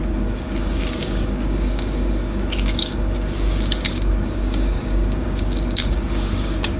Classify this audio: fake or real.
fake